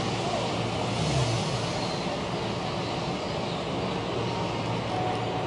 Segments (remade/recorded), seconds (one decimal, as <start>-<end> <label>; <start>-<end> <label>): 0.0-5.5 recorded